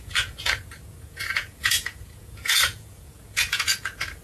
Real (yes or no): no